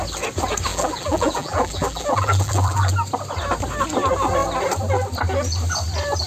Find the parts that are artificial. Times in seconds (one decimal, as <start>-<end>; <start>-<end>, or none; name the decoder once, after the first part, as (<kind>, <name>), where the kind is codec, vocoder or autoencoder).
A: 0.7-2.9 (vocoder, BigVGAN v2)